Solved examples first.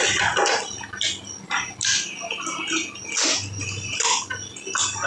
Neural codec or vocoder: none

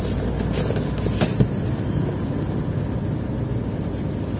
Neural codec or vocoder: none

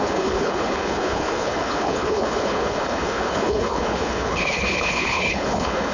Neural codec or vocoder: codec, HILCodec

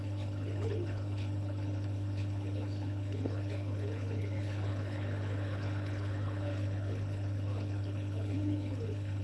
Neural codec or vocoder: codec, HILCodec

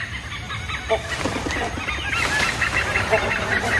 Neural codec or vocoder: none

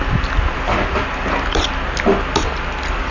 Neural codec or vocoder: none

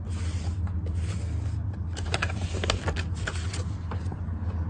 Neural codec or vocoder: none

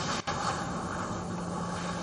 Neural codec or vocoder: none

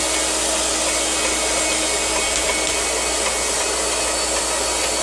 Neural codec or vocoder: none